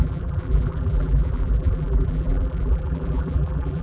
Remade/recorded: remade